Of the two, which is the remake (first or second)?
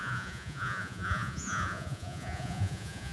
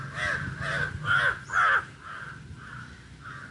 first